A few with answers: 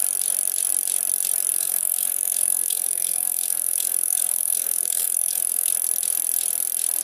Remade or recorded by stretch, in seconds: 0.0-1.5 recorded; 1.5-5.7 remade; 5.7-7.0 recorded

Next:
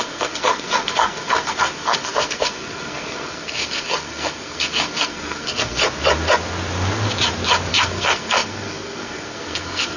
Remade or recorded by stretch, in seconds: 0.0-5.8 remade; 5.8-7.7 recorded; 7.7-10.0 remade

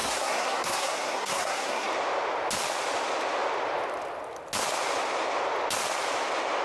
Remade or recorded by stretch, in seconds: 0.0-1.9 remade; 1.9-6.6 recorded

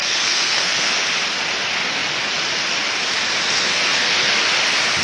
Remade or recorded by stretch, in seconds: 0.0-0.9 remade; 0.9-3.7 recorded; 3.7-4.3 remade; 4.3-5.0 recorded

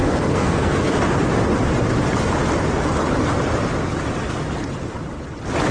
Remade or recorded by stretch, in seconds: 0.0-0.9 remade; 0.9-5.7 recorded